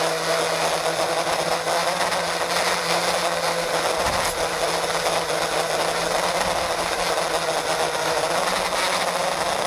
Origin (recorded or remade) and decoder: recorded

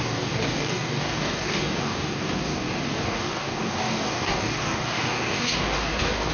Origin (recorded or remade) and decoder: remade, codec, DAC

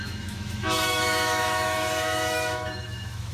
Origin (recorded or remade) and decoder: remade, autoencoder, DAC-VAE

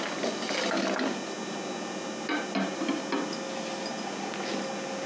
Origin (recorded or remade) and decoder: recorded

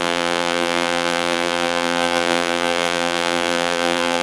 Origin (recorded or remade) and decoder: remade, vocoder, BigVGAN v2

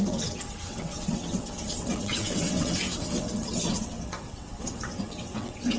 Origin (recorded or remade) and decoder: remade, vocoder, WaveNeXt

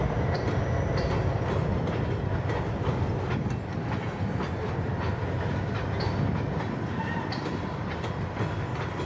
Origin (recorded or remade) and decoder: recorded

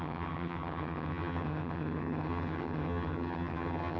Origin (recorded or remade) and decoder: remade, vocoder, HiFi-GAN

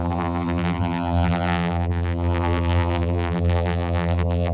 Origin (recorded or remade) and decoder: remade, vocoder, BigVGAN v2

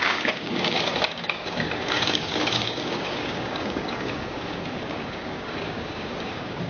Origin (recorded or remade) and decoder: remade, codec, DAC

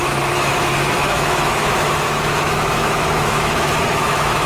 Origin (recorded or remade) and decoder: remade, autoencoder, DAC-VAE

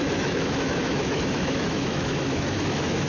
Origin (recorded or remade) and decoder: remade, autoencoder, DAC-VAE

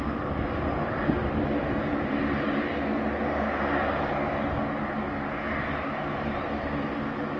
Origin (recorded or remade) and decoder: recorded